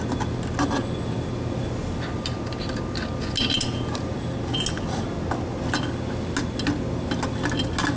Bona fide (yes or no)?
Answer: yes